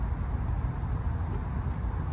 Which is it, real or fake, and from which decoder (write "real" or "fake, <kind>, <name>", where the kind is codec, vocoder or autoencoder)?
real